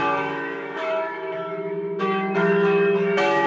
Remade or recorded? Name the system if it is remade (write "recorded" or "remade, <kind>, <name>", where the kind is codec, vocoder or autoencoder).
remade, autoencoder, DAC-VAE